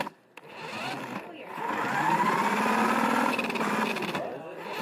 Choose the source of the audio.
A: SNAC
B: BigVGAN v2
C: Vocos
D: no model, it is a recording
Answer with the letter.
D